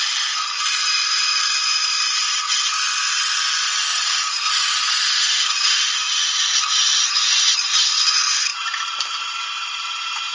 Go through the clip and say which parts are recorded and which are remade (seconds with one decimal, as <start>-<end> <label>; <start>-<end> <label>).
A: 0.0-8.5 recorded; 8.5-9.2 remade; 9.2-10.3 recorded